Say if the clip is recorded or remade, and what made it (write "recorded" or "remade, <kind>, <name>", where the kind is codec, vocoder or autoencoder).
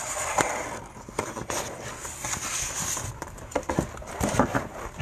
remade, vocoder, BigVGAN v2